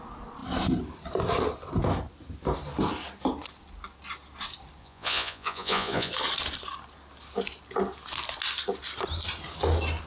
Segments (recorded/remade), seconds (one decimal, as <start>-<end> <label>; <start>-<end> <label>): 0.0-4.8 recorded; 4.8-6.1 remade; 6.1-10.1 recorded